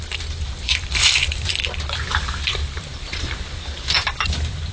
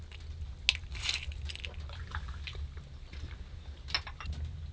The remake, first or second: first